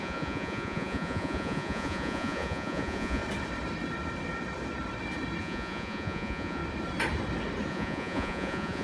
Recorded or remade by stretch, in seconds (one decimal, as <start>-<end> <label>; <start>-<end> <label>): 0.0-3.2 remade; 3.2-5.4 recorded; 5.4-6.6 remade; 6.6-7.7 recorded; 7.7-8.8 remade